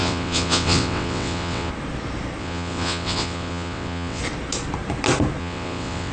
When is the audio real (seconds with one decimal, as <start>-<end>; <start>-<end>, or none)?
1.7-2.4; 4.2-5.4